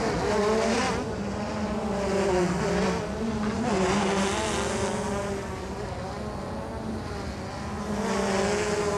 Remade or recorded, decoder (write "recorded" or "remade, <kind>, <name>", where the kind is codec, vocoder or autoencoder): recorded